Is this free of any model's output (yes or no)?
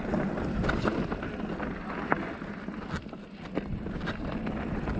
yes